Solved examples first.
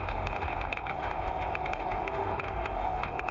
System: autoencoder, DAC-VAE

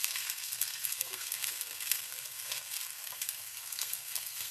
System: codec, SNAC